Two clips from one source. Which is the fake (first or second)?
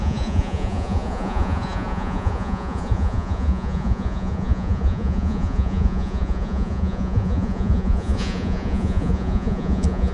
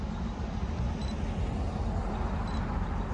first